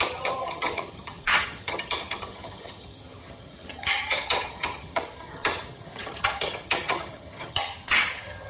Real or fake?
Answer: fake